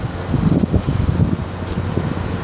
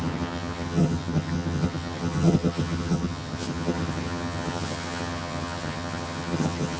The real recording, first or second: first